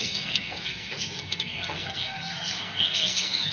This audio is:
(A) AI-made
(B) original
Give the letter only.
A